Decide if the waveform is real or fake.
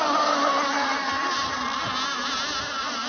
real